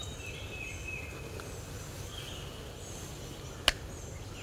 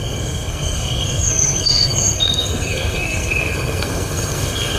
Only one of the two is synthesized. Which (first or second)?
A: second